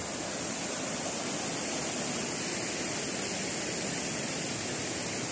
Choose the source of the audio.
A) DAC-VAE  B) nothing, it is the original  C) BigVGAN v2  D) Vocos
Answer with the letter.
B